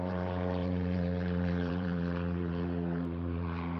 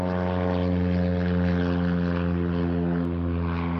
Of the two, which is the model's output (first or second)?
first